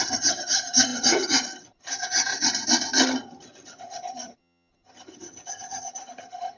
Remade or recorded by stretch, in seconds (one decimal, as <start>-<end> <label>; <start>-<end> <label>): 0.0-2.3 remade; 2.3-3.2 recorded; 3.2-6.6 remade